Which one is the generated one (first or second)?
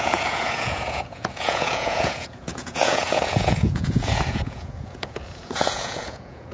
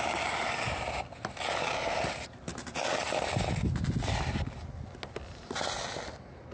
first